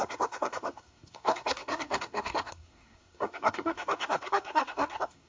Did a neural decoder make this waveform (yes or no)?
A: yes